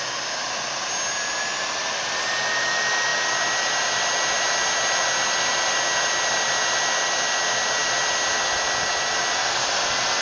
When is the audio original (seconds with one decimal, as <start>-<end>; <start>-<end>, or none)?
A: 0.0-10.2